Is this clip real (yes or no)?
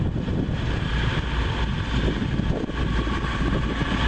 yes